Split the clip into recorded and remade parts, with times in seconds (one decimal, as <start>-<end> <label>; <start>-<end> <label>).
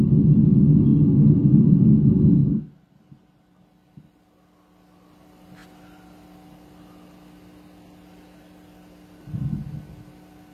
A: 0.0-10.5 recorded